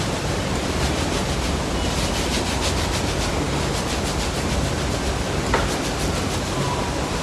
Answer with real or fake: real